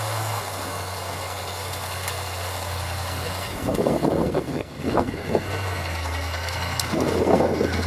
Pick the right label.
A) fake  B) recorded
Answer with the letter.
A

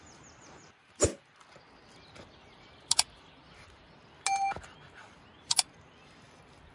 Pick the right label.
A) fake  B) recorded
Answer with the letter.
B